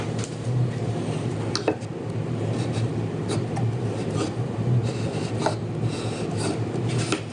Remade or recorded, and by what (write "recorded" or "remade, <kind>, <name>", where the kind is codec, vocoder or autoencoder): recorded